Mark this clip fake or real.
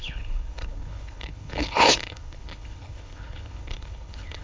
fake